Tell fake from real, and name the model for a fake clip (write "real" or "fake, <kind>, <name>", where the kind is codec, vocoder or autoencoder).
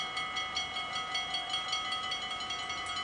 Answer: real